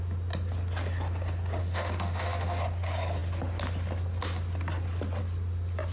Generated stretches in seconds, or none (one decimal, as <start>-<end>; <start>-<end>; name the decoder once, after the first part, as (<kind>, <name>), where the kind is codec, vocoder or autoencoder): 1.6-2.6 (autoencoder, DAC-VAE)